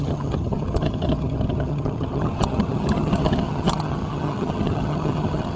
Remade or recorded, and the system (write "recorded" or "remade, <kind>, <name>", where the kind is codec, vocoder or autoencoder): remade, vocoder, HiFi-GAN